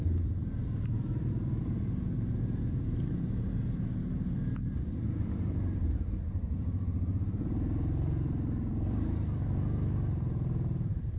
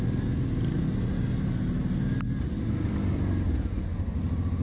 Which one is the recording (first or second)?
second